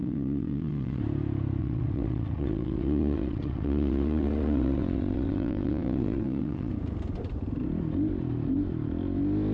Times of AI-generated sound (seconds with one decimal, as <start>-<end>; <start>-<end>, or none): 0.0-1.0; 1.6-6.7